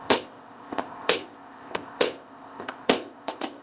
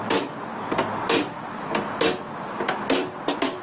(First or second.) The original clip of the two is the second